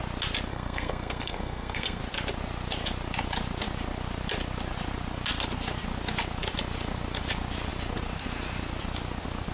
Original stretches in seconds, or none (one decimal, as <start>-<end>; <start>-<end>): 0.0-0.5; 2.0-9.5